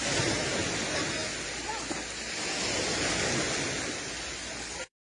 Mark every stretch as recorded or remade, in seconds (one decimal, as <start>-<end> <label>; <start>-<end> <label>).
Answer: 0.0-5.1 recorded

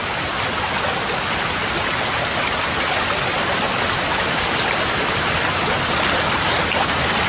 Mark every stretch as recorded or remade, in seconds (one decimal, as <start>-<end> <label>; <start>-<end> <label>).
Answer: 0.0-7.3 recorded

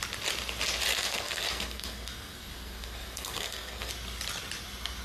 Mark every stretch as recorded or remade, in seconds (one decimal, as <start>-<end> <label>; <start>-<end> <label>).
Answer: 0.0-0.9 recorded; 0.9-3.9 remade; 3.9-5.0 recorded

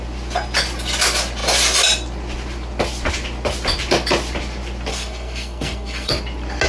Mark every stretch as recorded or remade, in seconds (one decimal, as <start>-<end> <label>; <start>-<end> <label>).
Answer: 0.0-4.9 recorded; 4.9-6.1 remade; 6.1-6.7 recorded